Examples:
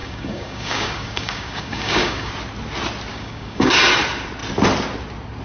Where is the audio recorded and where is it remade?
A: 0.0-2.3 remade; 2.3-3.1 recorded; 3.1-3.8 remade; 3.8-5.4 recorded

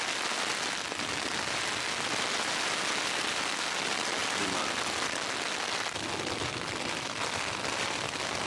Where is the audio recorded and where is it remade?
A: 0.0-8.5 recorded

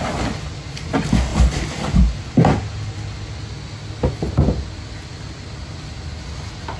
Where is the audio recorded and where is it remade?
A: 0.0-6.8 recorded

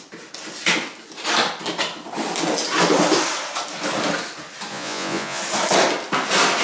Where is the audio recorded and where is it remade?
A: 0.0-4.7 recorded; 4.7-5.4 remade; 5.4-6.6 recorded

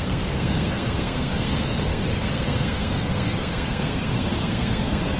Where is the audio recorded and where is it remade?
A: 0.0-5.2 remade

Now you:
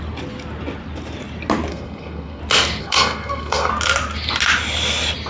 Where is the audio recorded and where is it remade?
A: 0.0-1.7 recorded; 1.7-2.4 remade; 2.4-2.8 recorded; 2.8-3.7 remade; 3.7-5.3 recorded